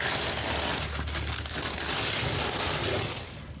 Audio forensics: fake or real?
real